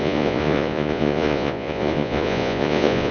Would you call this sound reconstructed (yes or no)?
yes